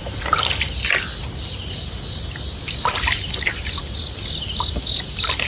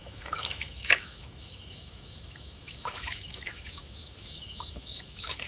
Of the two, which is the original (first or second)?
first